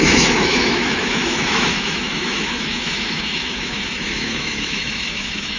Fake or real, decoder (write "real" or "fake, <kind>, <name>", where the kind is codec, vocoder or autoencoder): fake, autoencoder, DAC-VAE